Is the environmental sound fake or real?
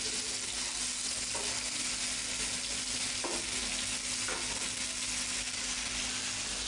real